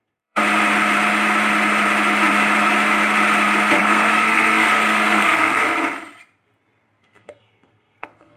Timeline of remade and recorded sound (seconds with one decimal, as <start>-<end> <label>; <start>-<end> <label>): 0.0-0.4 remade; 0.4-3.8 recorded; 3.8-5.6 remade; 5.6-7.0 recorded; 7.0-8.4 remade